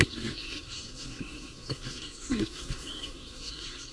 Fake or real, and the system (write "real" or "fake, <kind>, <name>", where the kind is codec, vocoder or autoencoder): fake, codec, SNAC